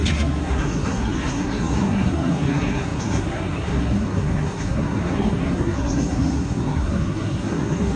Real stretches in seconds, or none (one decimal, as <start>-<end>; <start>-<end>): none